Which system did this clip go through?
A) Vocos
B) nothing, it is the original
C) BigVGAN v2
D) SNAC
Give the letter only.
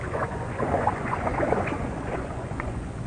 A